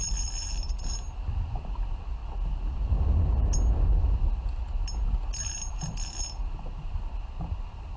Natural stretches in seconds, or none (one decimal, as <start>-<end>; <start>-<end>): 0.0-8.0